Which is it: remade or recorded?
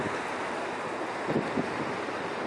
recorded